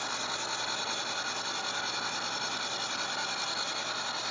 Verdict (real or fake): real